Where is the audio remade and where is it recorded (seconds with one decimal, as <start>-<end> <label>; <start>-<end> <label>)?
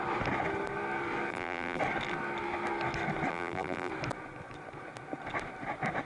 0.0-1.3 recorded; 1.3-1.8 remade; 1.8-3.3 recorded; 3.3-3.9 remade; 3.9-6.1 recorded